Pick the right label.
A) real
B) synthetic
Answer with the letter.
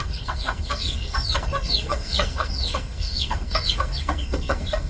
B